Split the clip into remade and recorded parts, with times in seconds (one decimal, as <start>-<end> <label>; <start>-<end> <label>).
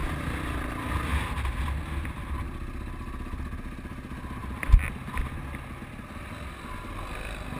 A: 0.0-7.6 recorded